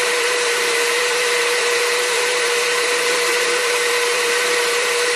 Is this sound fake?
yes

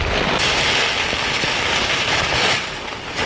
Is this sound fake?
no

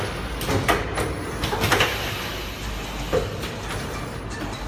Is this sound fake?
no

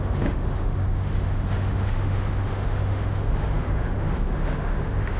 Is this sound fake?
yes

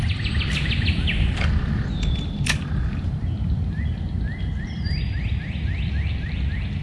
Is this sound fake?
no